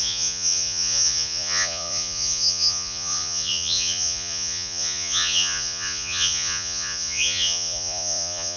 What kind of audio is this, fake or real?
fake